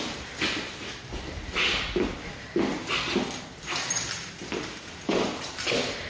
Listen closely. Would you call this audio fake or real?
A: real